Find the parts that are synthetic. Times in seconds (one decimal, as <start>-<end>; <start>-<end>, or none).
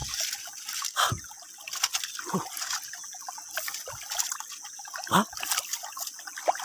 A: none